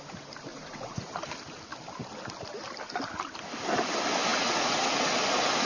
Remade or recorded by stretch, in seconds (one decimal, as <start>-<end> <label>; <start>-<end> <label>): 0.0-0.5 recorded; 0.5-1.0 remade; 1.0-4.3 recorded; 4.3-5.1 remade; 5.1-5.7 recorded